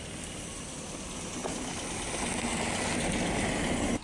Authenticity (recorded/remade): recorded